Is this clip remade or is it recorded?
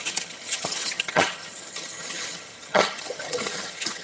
remade